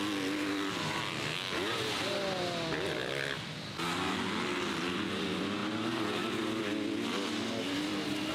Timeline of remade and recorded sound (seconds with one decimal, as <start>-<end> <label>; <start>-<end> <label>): 0.0-8.3 recorded